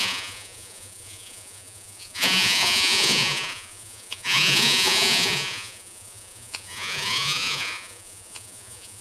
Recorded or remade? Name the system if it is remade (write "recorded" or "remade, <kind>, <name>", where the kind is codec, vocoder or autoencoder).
remade, vocoder, Vocos